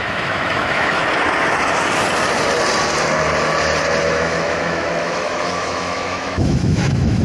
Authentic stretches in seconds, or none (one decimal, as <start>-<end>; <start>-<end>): 1.0-4.0